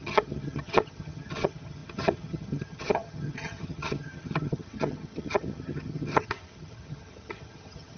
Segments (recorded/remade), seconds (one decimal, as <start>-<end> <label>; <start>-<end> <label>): 0.0-8.0 remade